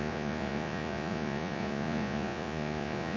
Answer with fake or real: fake